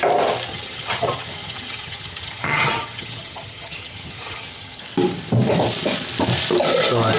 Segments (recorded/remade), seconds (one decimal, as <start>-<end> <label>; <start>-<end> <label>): 0.0-0.5 recorded; 0.5-4.8 remade; 4.8-7.2 recorded